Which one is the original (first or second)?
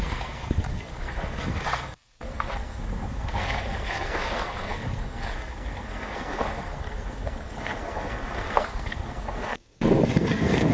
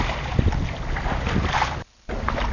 second